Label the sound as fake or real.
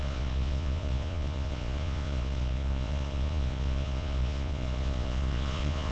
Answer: fake